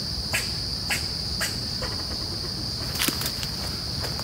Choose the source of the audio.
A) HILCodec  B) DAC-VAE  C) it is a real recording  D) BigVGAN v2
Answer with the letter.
C